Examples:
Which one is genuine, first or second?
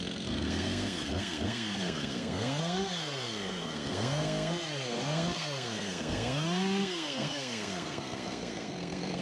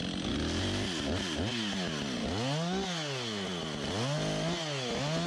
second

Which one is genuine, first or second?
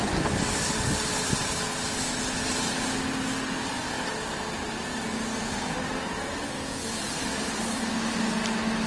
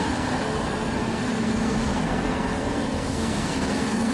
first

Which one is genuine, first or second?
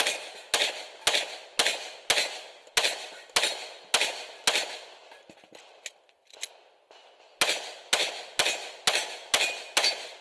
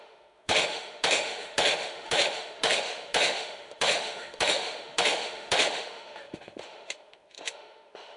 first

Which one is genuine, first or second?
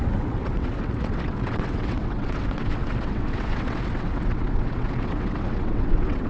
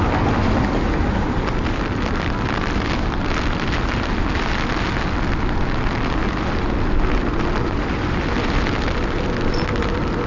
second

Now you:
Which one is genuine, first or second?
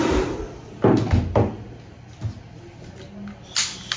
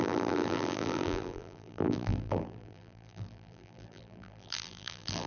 first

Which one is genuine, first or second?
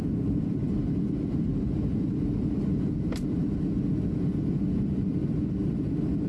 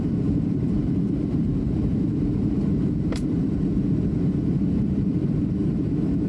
first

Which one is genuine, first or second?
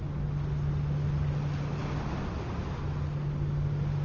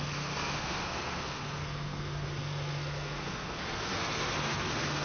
first